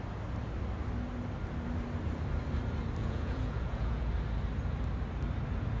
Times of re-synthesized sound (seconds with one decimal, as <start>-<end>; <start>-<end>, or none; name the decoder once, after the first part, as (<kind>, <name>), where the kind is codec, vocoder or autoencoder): 3.0-4.1 (vocoder, Vocos)